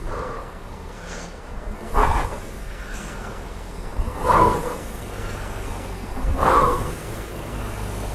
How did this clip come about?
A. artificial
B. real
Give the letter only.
A